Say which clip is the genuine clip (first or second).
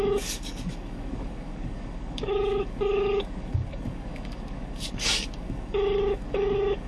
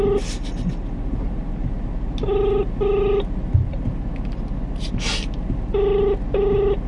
second